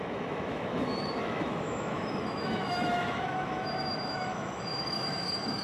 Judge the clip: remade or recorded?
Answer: remade